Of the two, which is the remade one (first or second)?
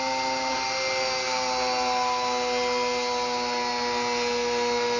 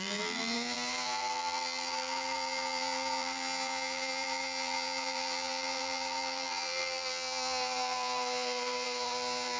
second